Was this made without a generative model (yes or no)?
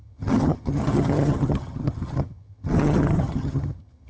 no